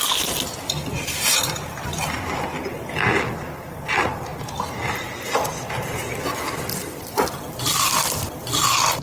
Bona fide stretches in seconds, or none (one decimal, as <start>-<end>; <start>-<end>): 0.0-9.0